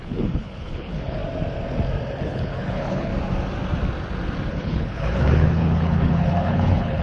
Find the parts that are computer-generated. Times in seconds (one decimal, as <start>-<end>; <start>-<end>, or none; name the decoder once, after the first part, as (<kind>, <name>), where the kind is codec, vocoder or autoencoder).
0.0-1.2 (codec, HILCodec); 2.2-3.1; 4.5-7.0